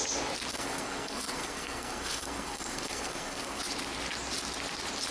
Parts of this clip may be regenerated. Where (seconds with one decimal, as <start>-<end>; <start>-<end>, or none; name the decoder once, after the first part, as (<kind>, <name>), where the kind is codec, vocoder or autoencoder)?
0.5-3.6 (codec, SNAC)